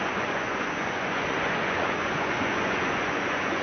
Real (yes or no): no